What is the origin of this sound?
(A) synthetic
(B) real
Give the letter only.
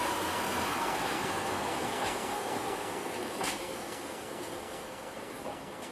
A